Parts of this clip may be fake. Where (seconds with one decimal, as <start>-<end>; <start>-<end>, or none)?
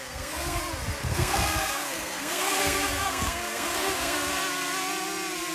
0.0-0.6; 1.0-4.3